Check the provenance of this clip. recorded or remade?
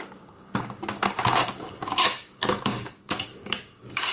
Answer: remade